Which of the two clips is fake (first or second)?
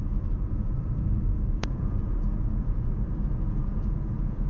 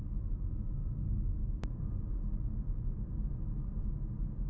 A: first